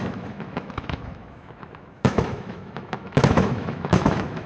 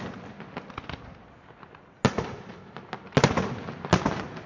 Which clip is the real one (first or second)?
second